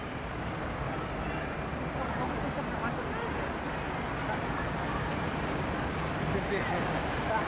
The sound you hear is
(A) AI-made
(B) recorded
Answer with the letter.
B